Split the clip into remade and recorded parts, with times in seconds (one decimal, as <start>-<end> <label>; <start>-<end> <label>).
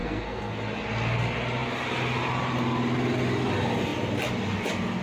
0.0-0.5 remade; 0.5-5.0 recorded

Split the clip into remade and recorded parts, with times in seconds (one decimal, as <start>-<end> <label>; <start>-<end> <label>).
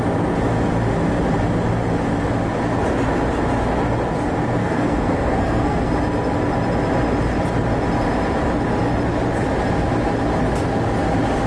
0.0-4.6 recorded; 4.6-5.9 remade; 5.9-11.5 recorded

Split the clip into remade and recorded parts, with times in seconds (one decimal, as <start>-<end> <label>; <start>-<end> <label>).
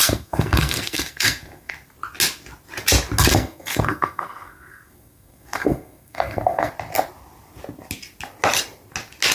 0.0-1.7 remade; 1.7-3.3 recorded; 3.3-6.7 remade; 6.7-9.3 recorded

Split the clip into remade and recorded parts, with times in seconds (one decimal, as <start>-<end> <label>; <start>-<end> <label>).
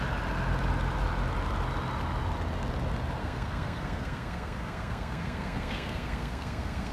0.0-3.2 recorded; 3.2-6.9 remade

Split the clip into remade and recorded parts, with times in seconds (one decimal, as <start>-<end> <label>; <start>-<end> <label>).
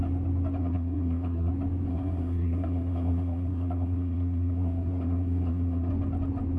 0.0-0.6 recorded; 0.6-1.5 remade; 1.5-1.9 recorded; 1.9-5.9 remade; 5.9-6.6 recorded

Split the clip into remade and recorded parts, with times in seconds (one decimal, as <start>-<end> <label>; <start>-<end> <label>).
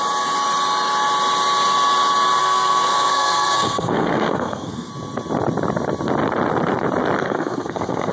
0.0-2.4 recorded; 2.4-4.9 remade; 4.9-7.2 recorded; 7.2-8.1 remade